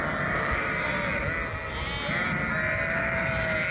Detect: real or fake real